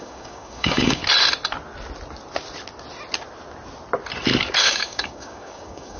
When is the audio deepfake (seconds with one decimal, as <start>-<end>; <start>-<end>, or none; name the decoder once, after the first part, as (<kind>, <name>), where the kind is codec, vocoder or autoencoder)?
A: 0.0-1.0 (codec, DAC); 4.6-6.0